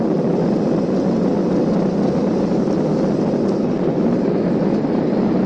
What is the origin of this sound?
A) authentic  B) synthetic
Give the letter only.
A